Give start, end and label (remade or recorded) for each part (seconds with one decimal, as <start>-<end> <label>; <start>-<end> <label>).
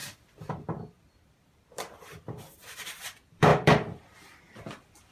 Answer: 0.0-3.0 recorded; 3.0-3.5 remade; 3.5-4.4 recorded; 4.4-5.1 remade